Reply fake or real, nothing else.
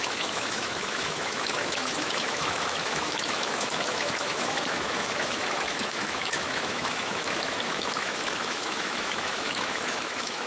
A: fake